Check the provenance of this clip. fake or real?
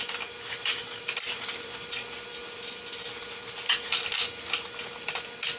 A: real